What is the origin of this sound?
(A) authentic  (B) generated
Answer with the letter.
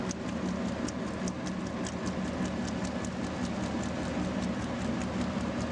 A